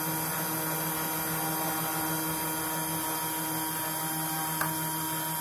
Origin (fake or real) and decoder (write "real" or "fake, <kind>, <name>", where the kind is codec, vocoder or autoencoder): real